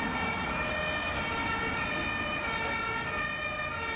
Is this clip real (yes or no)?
yes